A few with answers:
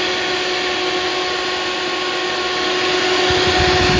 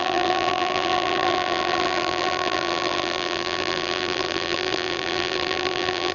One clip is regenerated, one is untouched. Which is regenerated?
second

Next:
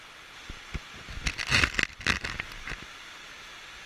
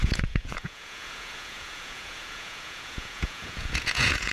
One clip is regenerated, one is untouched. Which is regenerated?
second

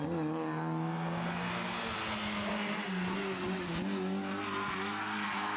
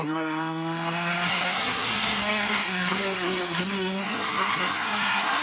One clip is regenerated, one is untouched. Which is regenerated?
second